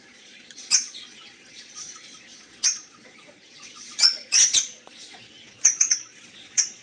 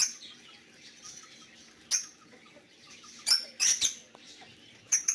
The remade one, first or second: first